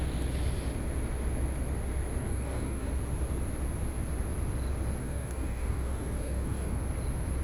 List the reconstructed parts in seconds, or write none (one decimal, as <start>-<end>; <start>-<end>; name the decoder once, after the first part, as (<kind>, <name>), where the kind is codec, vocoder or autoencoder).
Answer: 2.2-2.9 (codec, DAC); 5.0-6.8